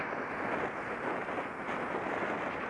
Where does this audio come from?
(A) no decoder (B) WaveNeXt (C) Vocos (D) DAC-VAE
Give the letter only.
A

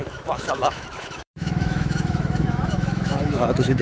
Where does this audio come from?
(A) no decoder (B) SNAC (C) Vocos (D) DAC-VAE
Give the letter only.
D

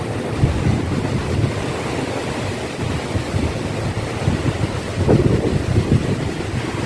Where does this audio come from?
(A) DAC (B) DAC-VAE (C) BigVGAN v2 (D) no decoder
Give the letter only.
D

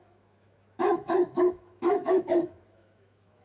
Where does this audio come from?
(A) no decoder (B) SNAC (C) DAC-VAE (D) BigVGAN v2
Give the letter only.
C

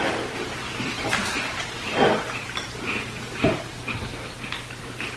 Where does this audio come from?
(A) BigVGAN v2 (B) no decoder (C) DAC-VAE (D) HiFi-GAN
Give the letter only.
B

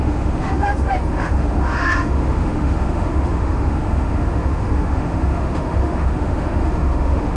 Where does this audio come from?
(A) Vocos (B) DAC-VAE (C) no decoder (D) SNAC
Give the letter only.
B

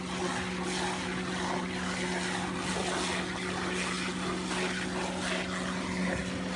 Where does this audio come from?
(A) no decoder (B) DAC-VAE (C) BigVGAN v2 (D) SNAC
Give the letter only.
A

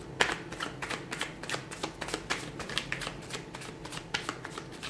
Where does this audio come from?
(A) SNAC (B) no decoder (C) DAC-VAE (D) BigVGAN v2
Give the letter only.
B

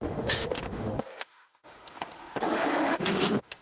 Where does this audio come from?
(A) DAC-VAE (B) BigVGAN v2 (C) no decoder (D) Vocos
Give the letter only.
A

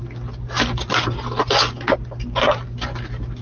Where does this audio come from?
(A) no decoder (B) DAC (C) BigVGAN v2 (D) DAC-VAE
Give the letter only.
A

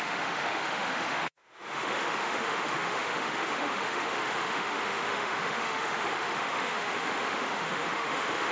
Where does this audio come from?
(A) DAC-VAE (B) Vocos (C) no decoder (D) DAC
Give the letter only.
A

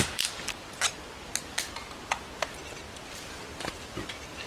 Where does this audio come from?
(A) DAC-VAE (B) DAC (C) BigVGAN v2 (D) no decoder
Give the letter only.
D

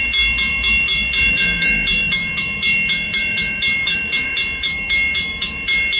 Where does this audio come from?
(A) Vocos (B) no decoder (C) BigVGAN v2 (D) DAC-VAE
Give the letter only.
D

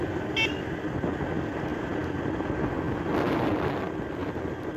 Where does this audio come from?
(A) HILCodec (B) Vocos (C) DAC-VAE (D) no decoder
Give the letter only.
D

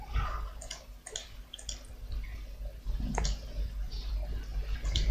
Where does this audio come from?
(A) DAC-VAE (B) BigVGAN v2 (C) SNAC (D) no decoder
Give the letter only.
D